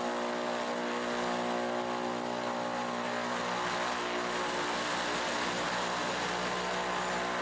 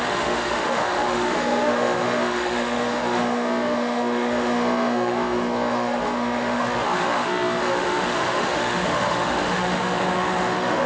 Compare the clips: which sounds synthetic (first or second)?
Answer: second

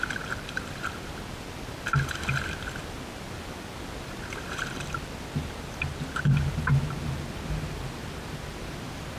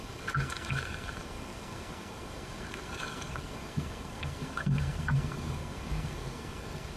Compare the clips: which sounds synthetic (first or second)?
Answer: second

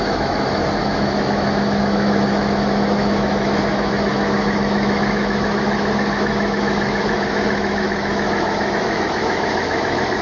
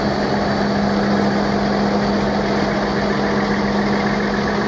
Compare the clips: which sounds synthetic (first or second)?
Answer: first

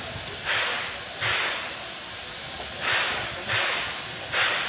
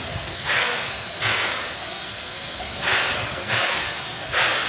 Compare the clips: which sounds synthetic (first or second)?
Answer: second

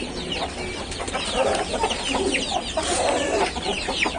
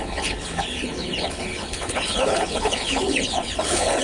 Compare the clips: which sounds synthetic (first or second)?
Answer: second